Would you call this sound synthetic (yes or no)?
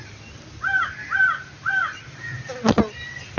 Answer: no